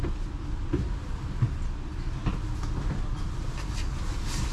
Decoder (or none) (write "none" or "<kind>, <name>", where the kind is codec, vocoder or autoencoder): none